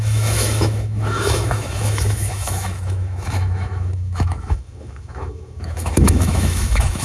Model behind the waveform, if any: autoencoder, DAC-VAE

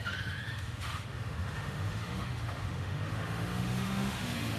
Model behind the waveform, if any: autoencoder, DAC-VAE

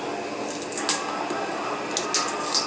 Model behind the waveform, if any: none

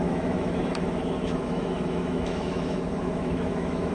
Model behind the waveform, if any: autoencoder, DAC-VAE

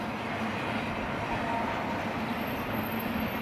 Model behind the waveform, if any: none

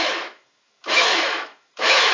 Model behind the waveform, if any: autoencoder, DAC-VAE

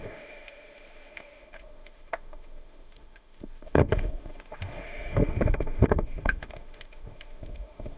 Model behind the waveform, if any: autoencoder, DAC-VAE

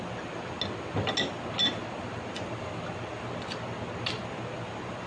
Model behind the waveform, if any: none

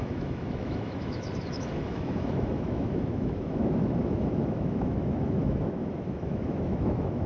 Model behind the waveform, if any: autoencoder, DAC-VAE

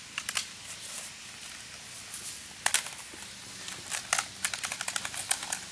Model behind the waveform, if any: none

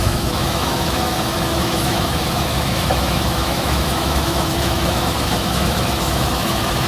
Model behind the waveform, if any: autoencoder, DAC-VAE